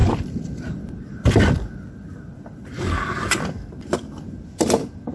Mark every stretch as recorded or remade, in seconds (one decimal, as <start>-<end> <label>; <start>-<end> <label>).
0.0-3.1 remade; 3.1-5.1 recorded